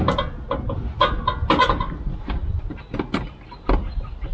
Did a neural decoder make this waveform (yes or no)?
no